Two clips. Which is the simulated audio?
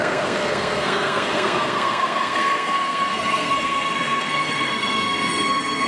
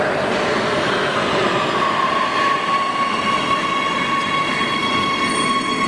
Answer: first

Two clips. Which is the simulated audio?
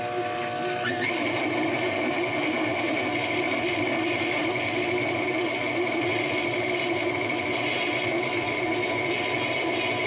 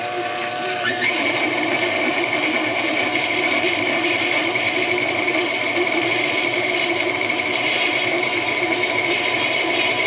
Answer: second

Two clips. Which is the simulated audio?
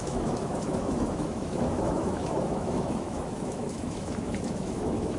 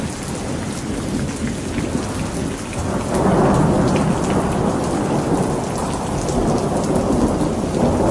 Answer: first